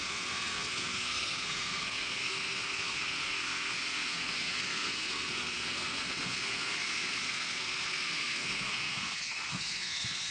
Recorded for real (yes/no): no